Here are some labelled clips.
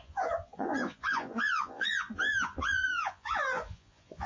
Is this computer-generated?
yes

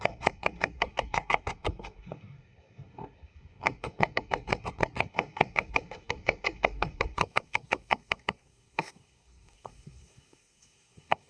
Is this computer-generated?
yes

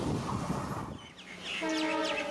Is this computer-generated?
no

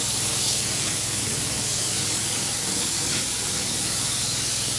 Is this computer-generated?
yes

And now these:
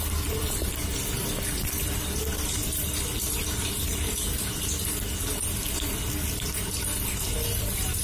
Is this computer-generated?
yes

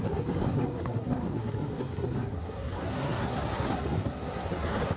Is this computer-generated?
yes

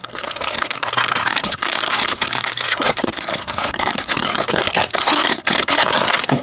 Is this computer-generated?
yes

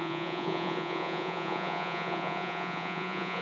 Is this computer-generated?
yes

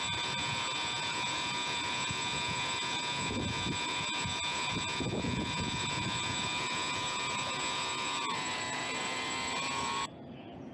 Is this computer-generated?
yes